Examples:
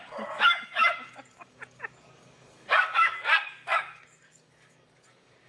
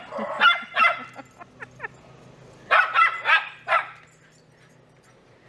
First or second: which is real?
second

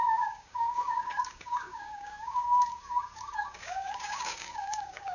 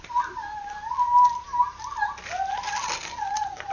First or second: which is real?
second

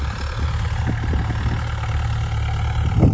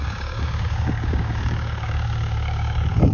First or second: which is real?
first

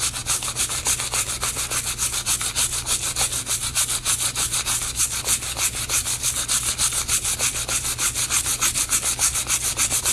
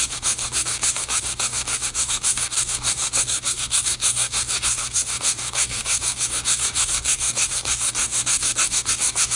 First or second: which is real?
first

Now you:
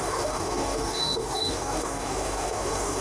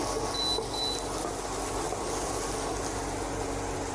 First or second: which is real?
second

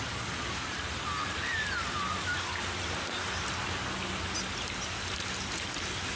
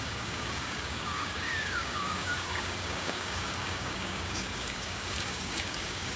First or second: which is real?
first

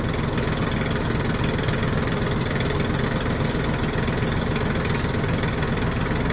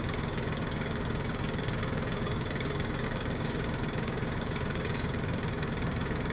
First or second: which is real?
first